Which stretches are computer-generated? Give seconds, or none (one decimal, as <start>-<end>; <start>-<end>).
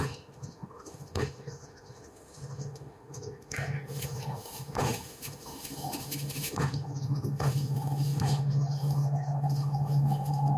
0.0-10.6